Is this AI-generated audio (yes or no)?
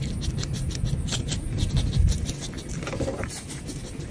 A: no